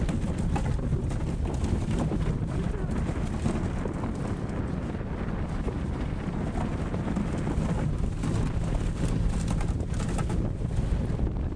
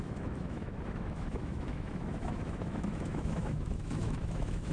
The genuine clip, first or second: first